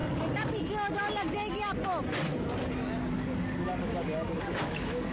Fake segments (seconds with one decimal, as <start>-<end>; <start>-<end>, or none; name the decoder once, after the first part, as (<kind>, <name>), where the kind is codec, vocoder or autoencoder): 3.1-5.1 (codec, DAC)